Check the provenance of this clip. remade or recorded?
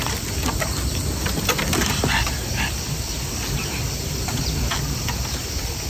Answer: recorded